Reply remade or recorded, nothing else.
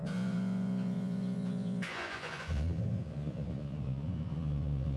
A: remade